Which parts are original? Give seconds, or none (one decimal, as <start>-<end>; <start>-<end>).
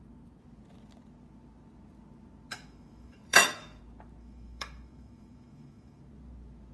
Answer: 0.0-2.5; 3.8-4.2; 6.0-6.7